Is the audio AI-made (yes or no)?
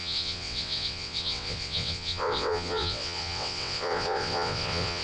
yes